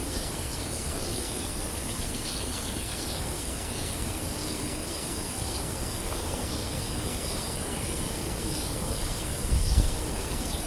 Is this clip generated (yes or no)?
yes